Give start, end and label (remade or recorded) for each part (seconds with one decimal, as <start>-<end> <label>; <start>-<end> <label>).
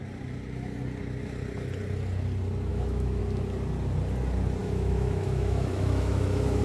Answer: 0.0-2.7 recorded; 2.7-3.2 remade; 3.2-4.6 recorded; 4.6-6.6 remade